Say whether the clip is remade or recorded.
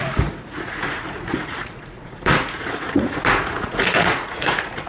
remade